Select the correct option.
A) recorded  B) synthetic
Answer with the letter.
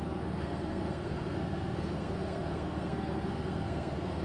B